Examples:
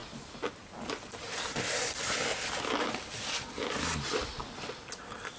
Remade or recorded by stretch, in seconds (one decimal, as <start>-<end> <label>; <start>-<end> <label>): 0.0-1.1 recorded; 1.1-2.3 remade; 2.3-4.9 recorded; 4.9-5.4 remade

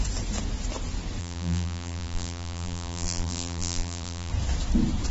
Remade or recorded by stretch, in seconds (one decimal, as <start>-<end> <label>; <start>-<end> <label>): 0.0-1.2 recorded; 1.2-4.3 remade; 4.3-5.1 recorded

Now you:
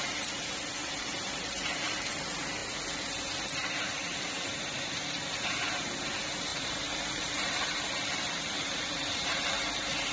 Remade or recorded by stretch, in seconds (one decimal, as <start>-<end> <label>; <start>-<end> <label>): 0.0-0.8 recorded; 0.8-2.2 remade; 2.2-6.5 recorded; 6.5-9.5 remade; 9.5-10.1 recorded

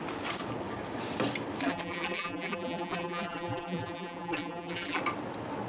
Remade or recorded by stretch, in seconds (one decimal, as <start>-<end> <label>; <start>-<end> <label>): 0.0-1.6 recorded; 1.6-5.0 remade; 5.0-5.7 recorded

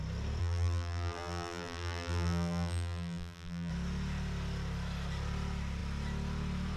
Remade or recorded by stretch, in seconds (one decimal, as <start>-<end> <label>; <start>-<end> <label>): 0.0-0.4 recorded; 0.4-3.7 remade; 3.7-6.8 recorded

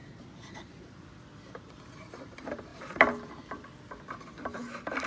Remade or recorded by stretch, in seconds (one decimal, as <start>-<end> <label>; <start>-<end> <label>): 0.0-1.5 recorded; 1.5-2.7 remade; 2.7-5.1 recorded

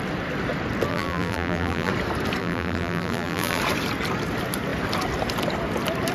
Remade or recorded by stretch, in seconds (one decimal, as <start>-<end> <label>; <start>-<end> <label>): 0.0-0.9 recorded; 0.9-1.9 remade; 1.9-2.4 recorded; 2.4-3.6 remade; 3.6-6.1 recorded

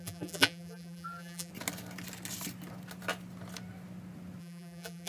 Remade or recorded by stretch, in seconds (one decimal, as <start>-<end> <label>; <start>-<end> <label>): 0.0-1.5 remade; 1.5-4.4 recorded; 4.4-5.1 remade